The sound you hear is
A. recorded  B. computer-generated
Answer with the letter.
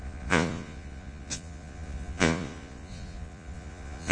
B